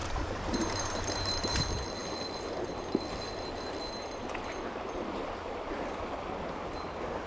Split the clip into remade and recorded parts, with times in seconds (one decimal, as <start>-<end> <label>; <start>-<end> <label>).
0.0-1.6 remade; 1.6-7.3 recorded